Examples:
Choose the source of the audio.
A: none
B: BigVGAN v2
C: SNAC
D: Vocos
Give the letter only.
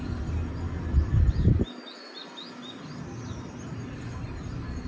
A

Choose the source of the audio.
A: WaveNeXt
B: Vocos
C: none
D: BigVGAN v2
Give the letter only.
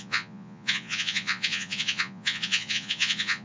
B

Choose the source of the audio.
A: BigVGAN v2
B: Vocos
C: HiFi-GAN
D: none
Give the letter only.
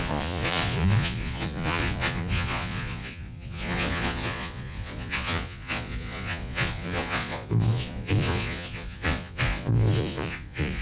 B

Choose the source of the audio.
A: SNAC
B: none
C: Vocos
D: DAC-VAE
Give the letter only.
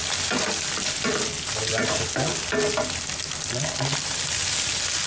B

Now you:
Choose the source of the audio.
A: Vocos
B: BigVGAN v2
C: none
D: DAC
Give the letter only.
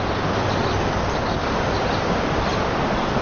C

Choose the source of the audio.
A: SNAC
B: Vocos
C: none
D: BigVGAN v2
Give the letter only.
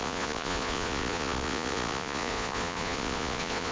B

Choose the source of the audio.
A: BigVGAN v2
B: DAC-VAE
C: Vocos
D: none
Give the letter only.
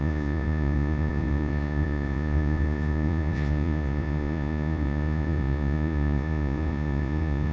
C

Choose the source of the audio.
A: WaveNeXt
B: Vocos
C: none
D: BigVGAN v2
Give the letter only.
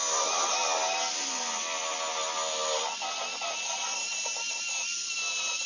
C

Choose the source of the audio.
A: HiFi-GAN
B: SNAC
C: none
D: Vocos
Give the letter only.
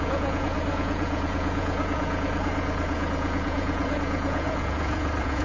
D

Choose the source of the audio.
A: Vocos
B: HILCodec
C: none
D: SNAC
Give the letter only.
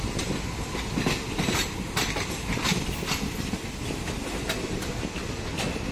C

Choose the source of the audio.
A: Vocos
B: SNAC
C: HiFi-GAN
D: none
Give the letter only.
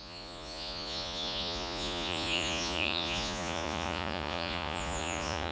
A